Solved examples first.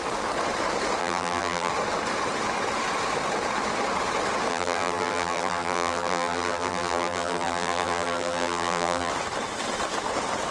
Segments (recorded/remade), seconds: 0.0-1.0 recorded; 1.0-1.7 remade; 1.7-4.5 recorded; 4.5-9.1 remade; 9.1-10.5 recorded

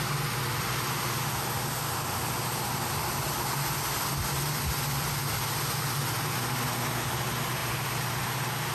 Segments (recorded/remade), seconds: 0.0-8.7 recorded

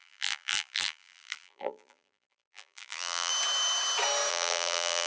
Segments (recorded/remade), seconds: 0.0-3.3 remade; 3.3-4.3 recorded; 4.3-5.1 remade

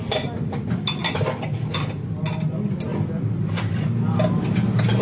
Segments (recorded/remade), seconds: 0.0-5.0 recorded

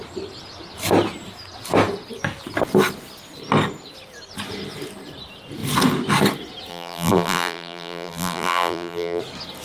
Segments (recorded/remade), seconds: 0.0-6.7 recorded; 6.7-9.2 remade; 9.2-9.6 recorded

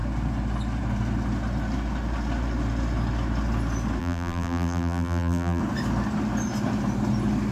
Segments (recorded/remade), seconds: 0.0-4.0 recorded; 4.0-5.6 remade; 5.6-7.5 recorded